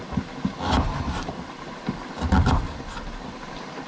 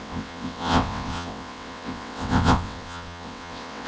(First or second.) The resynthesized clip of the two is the second